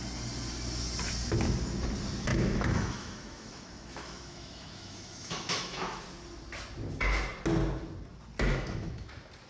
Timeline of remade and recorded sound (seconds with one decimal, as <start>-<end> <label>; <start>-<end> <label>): 0.0-2.3 recorded; 2.3-6.0 remade; 6.0-8.5 recorded; 8.5-9.1 remade; 9.1-9.5 recorded